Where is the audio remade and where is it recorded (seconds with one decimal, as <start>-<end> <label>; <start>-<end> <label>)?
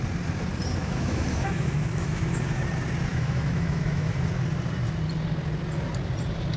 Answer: 0.0-0.8 recorded; 0.8-2.6 remade; 2.6-3.1 recorded; 3.1-4.3 remade; 4.3-6.6 recorded